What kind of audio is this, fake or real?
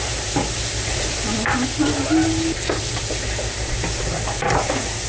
real